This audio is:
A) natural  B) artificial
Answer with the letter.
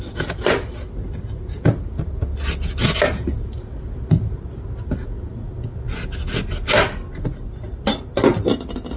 A